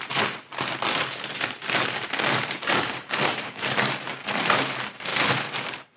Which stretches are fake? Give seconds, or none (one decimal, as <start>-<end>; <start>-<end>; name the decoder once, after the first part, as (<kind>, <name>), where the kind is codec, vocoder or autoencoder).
0.0-0.5 (vocoder, BigVGAN v2); 2.1-5.1